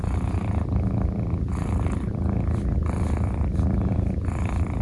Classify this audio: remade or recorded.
recorded